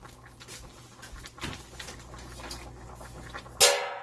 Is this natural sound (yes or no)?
yes